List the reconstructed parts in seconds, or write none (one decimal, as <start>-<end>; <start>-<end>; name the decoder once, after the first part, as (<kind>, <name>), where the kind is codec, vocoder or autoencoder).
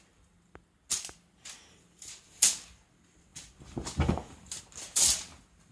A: none